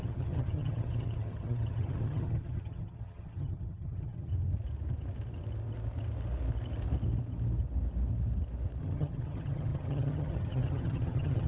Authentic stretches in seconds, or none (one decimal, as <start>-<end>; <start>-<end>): 4.3-8.8